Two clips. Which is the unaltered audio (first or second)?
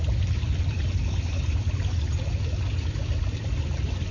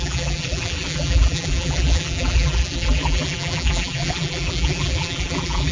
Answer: first